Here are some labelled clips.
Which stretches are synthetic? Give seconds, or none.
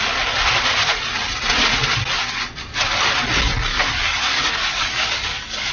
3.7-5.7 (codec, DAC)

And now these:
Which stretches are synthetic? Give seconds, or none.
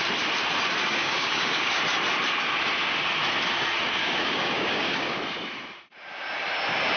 0.8-1.7 (codec, DAC); 4.0-5.1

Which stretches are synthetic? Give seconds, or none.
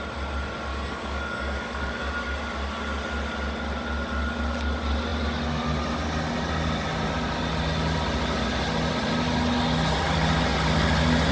0.7-2.1 (codec, DAC)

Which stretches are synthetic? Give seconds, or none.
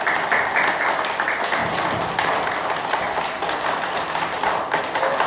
none